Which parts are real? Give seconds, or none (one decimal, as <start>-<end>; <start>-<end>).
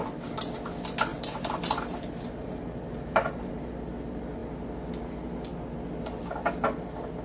0.0-1.1; 3.7-7.2